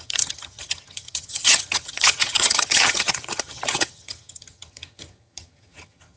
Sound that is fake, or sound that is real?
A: fake